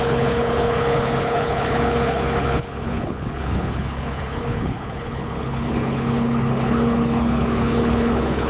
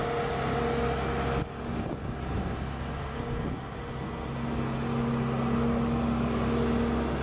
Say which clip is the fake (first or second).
first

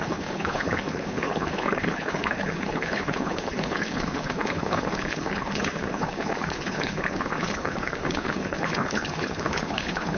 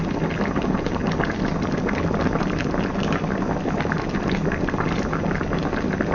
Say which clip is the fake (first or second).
first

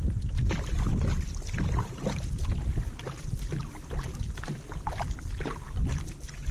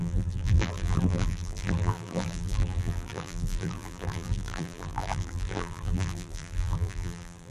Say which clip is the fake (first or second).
second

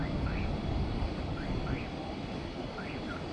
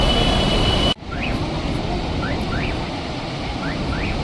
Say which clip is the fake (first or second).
first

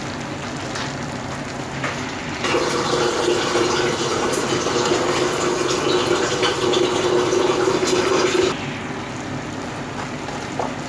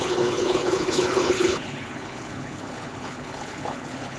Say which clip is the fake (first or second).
second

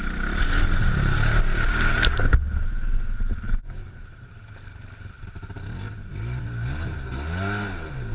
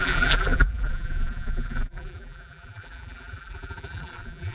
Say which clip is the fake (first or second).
second